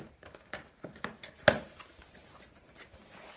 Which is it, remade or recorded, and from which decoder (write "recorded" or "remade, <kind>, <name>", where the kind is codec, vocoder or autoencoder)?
recorded